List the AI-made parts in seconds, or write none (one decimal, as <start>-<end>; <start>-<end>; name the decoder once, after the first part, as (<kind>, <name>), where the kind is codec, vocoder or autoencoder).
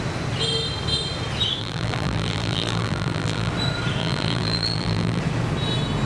1.6-3.5 (vocoder, BigVGAN v2); 4.0-5.2